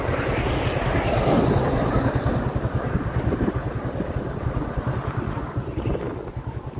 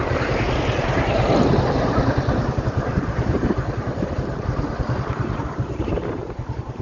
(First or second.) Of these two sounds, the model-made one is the second